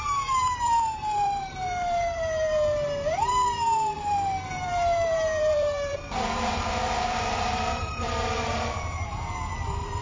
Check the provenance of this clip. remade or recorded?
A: remade